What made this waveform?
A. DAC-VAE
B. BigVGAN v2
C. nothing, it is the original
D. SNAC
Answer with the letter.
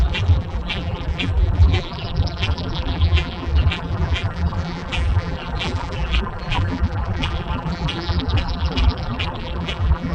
B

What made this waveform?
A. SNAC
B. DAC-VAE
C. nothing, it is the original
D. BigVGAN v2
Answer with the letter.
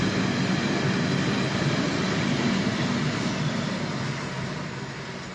C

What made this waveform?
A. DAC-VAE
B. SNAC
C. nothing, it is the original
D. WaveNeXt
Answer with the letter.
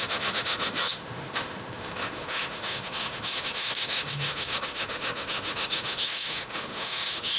A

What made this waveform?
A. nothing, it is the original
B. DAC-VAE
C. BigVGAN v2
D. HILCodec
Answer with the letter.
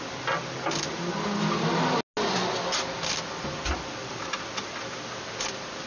A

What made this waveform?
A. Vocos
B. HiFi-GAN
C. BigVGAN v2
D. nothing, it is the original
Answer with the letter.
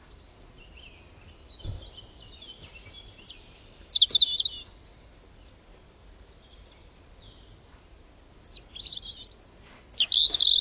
D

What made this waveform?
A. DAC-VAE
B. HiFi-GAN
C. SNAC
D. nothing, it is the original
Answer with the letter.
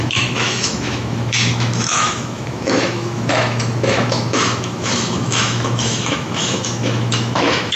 A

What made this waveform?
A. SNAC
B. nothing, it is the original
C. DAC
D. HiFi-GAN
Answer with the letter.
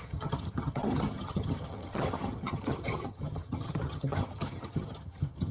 D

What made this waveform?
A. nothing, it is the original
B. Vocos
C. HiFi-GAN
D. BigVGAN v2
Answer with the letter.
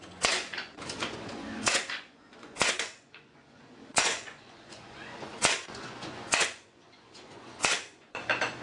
B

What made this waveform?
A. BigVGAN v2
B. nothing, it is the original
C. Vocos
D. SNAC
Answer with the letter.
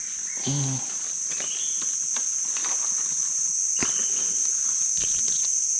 B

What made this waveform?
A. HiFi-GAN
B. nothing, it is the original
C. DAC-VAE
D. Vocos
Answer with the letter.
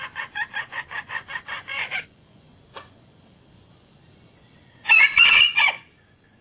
D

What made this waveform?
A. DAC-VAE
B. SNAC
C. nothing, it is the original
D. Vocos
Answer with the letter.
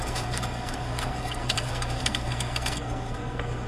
B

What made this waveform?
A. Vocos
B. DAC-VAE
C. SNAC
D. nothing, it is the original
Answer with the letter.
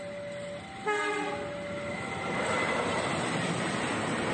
D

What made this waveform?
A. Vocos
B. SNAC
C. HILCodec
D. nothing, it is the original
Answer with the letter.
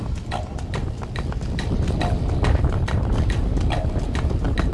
D